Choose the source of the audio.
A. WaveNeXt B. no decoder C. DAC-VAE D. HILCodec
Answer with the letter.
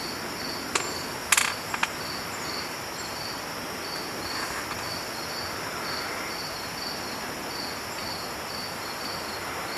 B